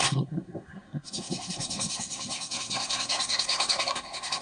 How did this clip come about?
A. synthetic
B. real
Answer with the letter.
A